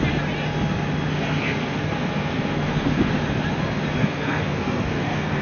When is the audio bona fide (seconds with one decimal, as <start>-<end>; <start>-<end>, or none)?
0.0-1.1; 3.1-4.0